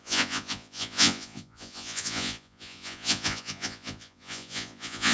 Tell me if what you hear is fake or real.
fake